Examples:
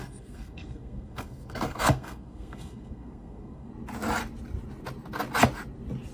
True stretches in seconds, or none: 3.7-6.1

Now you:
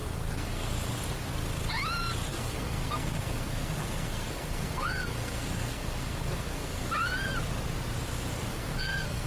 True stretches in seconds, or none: 0.7-2.3; 6.9-8.5

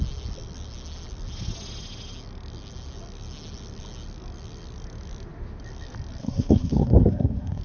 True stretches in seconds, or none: 0.0-6.2

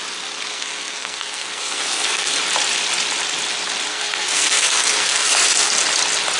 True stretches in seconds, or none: 0.0-0.5; 2.4-3.9; 5.7-6.4

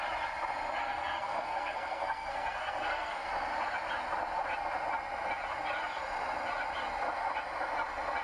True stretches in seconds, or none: 0.0-0.8; 3.3-8.2

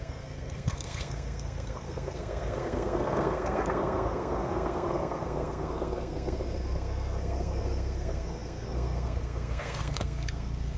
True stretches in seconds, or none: none

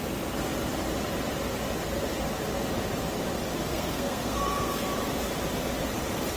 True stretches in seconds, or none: 0.0-3.7; 4.8-6.4

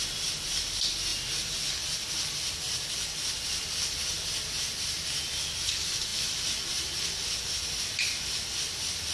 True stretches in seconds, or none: 0.0-9.1